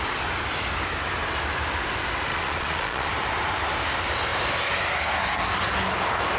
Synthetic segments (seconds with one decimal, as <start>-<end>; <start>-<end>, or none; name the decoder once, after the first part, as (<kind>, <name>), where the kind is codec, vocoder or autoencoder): 2.3-3.1 (vocoder, Vocos)